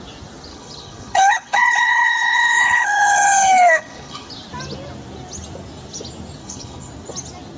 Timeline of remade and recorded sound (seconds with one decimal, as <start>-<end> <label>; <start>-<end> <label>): 0.0-0.5 recorded; 0.5-4.3 remade; 4.3-6.4 recorded; 6.4-6.9 remade; 6.9-7.6 recorded